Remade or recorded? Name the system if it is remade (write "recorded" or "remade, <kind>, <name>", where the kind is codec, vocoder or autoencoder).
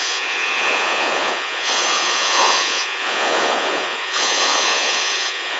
remade, vocoder, Vocos